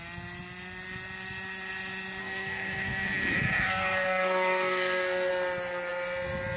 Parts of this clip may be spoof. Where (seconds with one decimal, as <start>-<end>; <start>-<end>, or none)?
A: 2.2-5.3